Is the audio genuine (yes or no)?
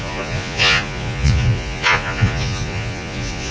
no